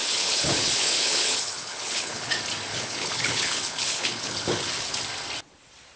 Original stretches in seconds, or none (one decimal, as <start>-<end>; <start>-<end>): 2.3-2.7; 5.0-6.0